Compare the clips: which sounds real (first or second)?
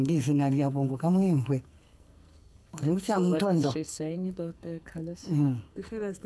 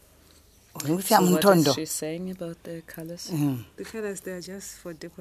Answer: second